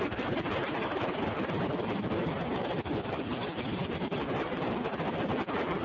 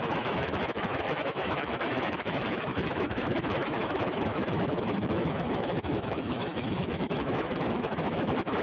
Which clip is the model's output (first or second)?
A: second